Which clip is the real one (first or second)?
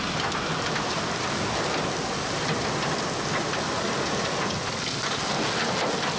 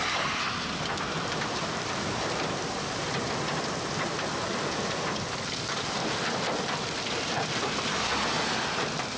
first